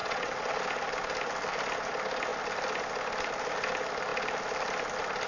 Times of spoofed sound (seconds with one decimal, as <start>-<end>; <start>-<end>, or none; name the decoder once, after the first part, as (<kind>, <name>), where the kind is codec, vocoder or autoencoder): 0.0-0.6 (vocoder, WaveNeXt)